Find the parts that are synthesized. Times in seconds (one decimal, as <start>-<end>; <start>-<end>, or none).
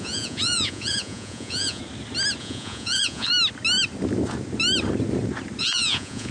0.0-1.8; 2.4-3.3; 5.6-6.3